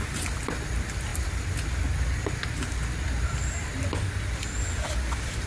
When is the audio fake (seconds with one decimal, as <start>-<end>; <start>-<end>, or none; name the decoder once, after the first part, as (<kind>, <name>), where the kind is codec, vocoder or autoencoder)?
none

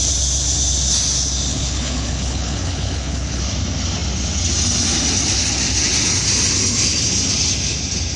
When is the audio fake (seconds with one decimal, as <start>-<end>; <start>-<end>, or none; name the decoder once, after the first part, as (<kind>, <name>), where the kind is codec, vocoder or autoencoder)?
1.5-3.4 (codec, HILCodec)

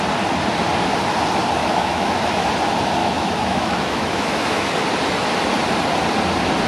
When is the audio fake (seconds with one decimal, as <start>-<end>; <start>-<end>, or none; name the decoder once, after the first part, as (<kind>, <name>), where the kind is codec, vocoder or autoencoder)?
1.6-2.5 (autoencoder, DAC-VAE); 3.0-4.7